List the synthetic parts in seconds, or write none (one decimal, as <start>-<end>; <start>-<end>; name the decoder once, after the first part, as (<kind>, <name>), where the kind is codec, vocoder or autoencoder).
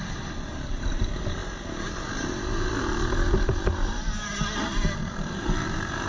0.0-1.4 (vocoder, BigVGAN v2); 5.1-6.1